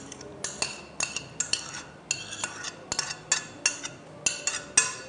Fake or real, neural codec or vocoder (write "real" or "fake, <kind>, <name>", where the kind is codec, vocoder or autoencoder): real